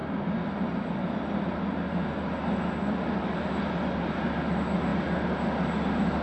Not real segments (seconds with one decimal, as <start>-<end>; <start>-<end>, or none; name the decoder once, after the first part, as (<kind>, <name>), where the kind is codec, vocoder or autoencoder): none